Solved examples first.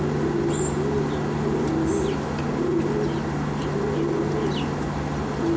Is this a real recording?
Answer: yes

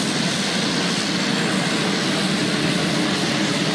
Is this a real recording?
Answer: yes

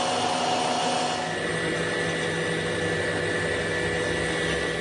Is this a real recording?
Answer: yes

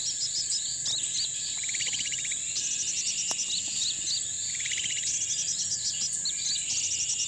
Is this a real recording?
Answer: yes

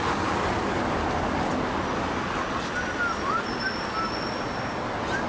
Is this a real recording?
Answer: yes